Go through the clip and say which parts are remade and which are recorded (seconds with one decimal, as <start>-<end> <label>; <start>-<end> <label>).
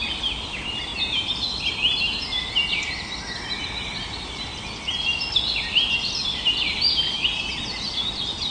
0.0-8.5 recorded